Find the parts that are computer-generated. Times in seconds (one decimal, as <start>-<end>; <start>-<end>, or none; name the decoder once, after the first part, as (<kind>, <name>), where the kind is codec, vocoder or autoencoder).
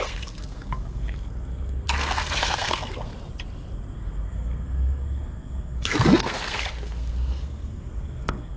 0.0-3.1 (codec, SNAC); 4.0-8.6